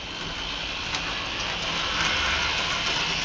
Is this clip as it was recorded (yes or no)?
yes